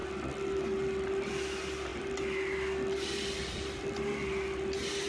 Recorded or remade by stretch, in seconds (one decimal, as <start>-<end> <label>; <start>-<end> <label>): 0.0-5.1 recorded